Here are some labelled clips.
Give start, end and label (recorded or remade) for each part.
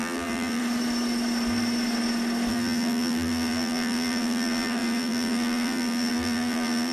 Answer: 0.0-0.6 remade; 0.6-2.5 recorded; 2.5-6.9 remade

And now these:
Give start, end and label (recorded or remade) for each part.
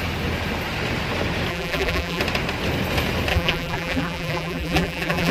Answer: 0.0-1.5 recorded; 1.5-2.2 remade; 2.2-3.3 recorded; 3.3-5.3 remade